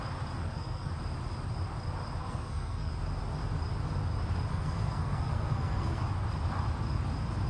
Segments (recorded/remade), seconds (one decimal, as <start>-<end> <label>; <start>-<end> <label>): 0.0-0.4 recorded; 0.4-0.9 remade; 0.9-2.2 recorded; 2.2-2.9 remade; 2.9-4.5 recorded; 4.5-6.0 remade; 6.0-7.5 recorded